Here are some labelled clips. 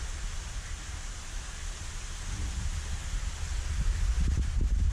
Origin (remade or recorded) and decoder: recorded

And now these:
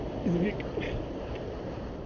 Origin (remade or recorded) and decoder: recorded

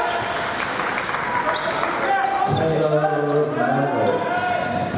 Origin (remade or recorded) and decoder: recorded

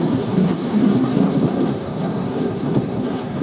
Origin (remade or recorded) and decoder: remade, codec, SNAC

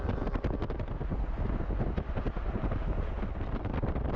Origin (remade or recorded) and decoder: recorded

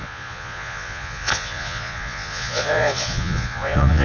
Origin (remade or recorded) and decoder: remade, vocoder, Vocos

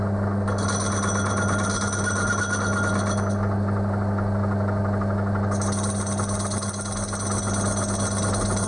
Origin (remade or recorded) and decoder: recorded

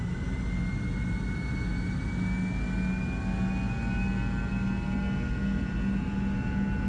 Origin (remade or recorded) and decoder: recorded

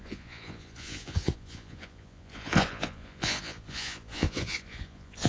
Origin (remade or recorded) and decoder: remade, vocoder, Vocos